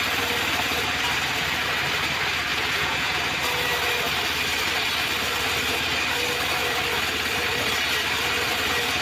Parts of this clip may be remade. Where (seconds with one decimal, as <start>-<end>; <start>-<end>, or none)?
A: 2.5-3.2